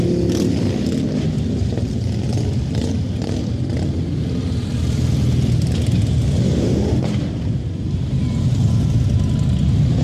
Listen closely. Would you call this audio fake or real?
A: real